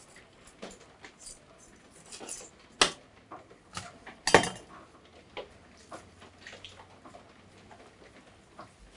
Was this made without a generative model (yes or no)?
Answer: yes